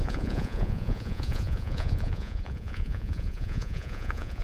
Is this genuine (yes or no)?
no